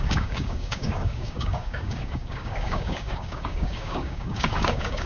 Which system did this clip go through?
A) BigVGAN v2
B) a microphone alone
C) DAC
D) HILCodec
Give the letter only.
C